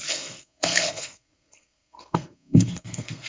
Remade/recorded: remade